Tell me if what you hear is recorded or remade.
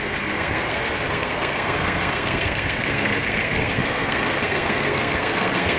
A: remade